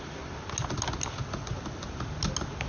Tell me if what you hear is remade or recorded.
recorded